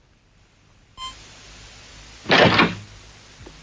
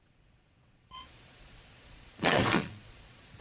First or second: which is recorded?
first